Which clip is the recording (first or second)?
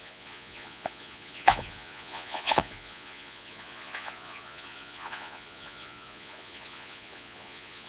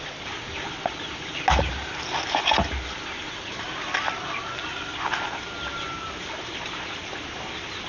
second